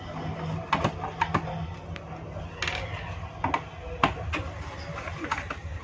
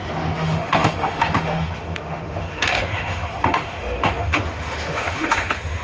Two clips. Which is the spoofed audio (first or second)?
second